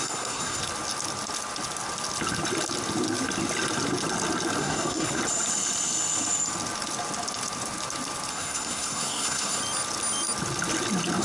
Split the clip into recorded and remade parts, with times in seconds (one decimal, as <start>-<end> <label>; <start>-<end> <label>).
0.0-0.6 remade; 0.6-4.6 recorded; 4.6-5.2 remade; 5.2-8.3 recorded; 8.3-9.6 remade; 9.6-11.2 recorded